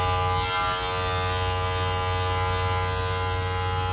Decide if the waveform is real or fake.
real